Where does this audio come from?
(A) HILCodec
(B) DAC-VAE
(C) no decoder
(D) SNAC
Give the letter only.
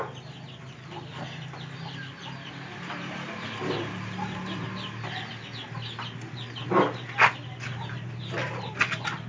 C